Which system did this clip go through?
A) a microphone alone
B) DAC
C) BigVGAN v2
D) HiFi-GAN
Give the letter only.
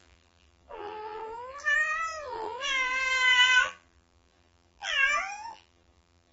C